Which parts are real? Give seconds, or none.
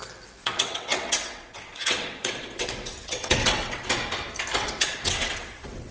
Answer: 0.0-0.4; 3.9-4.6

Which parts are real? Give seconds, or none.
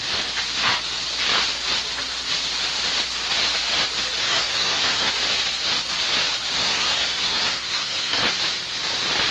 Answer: 0.0-4.2; 5.1-6.6; 8.2-9.3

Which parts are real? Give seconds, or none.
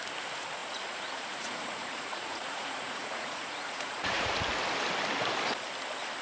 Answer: 0.0-0.6; 4.3-6.2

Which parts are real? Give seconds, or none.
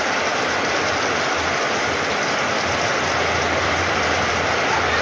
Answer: 0.6-3.6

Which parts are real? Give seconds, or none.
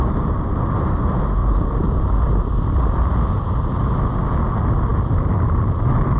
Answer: 0.0-1.4; 2.0-4.9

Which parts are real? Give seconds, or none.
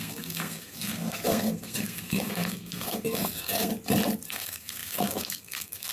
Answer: 3.7-4.3